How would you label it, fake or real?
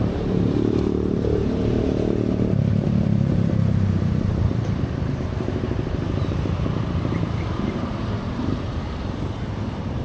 fake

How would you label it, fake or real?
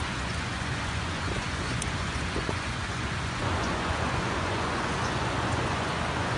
fake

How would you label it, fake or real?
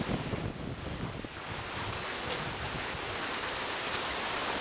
real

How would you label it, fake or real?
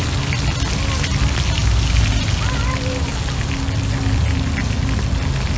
real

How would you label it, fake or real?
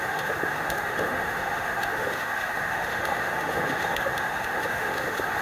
fake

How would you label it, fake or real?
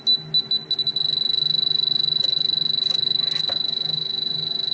real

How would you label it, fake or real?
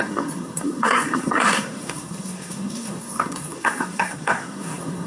fake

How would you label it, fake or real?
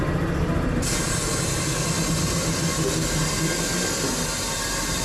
real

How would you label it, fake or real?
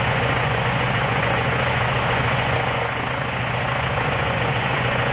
fake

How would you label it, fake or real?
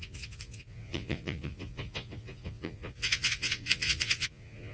fake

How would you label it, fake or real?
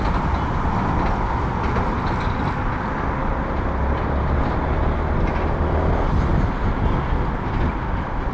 real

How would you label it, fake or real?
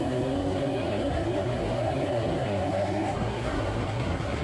fake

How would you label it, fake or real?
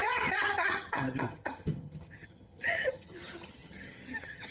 fake